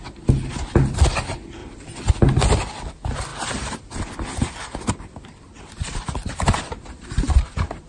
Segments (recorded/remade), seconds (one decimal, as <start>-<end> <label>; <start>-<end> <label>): 0.0-1.6 recorded; 1.6-2.1 remade; 2.1-3.3 recorded; 3.3-7.9 remade